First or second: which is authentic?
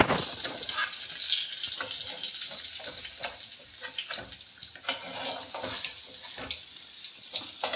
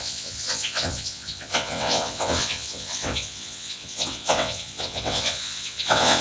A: first